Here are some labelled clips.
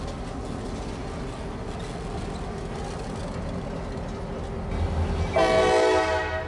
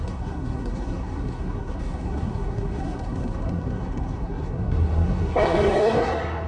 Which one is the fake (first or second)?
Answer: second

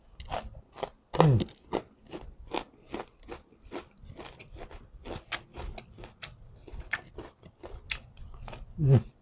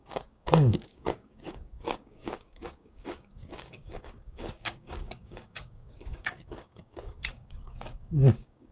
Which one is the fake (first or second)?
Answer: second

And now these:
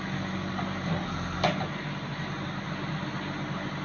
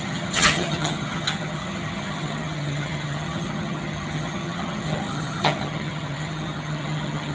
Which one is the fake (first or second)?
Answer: second